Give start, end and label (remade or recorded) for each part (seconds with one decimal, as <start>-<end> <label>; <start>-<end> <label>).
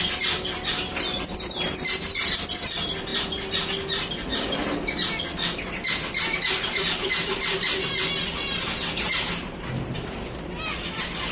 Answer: 0.0-11.3 recorded